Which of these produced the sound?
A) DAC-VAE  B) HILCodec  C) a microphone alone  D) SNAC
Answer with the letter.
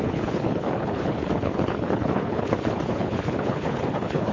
B